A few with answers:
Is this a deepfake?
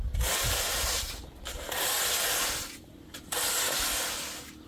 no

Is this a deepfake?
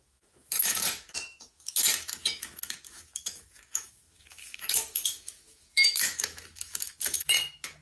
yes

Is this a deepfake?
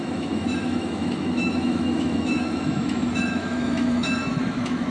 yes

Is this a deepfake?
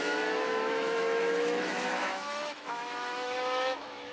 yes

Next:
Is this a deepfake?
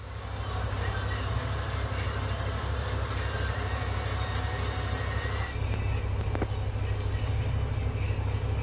no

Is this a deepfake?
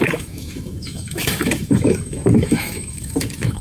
yes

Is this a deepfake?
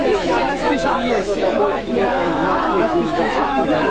yes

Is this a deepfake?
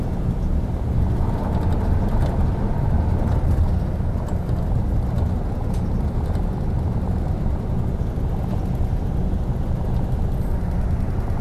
no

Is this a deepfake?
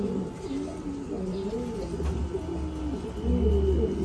no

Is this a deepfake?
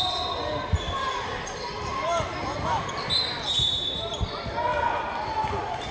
no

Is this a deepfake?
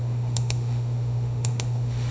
yes